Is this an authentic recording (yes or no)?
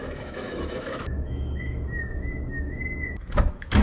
no